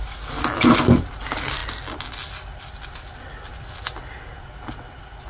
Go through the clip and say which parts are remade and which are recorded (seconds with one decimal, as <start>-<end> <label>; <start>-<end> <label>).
0.0-5.3 recorded